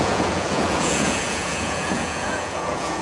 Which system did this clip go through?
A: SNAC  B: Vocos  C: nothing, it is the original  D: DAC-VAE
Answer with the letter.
B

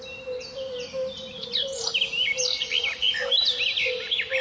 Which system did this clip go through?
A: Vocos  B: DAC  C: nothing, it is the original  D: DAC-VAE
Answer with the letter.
C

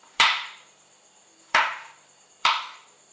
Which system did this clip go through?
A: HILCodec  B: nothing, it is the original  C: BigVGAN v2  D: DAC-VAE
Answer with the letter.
C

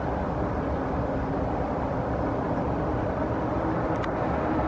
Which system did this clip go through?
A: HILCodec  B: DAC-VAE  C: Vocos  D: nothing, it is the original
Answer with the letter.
D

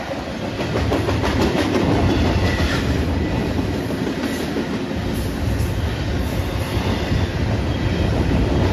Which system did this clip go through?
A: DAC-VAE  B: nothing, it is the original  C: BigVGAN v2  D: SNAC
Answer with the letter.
B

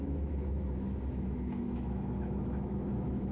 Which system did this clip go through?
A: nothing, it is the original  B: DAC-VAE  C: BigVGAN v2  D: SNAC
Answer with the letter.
B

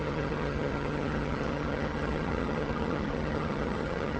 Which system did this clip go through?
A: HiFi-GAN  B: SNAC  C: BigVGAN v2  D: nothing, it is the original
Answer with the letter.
A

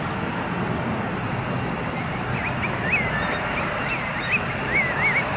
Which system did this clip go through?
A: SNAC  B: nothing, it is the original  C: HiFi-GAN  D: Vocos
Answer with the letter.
B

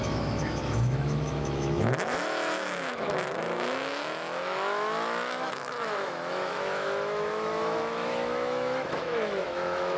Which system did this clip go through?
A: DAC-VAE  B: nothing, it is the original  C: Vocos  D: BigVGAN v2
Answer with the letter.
A